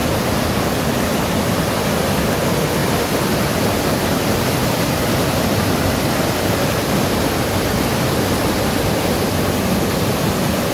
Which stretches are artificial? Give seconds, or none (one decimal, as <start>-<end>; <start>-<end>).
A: 0.0-1.7; 2.8-7.2